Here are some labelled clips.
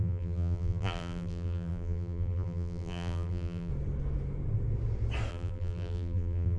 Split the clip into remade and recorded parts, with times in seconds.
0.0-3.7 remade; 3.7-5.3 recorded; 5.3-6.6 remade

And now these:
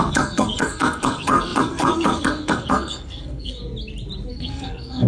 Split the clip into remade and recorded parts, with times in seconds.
0.0-3.6 remade; 3.6-4.3 recorded; 4.3-5.1 remade

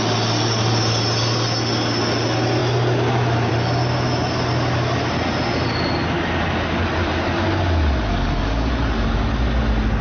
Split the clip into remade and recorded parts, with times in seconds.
0.0-8.1 recorded; 8.1-8.7 remade; 8.7-10.0 recorded

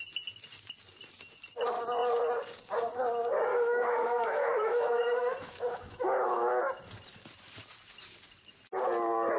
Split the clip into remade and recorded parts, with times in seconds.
0.0-3.5 recorded; 3.5-6.6 remade; 6.6-9.4 recorded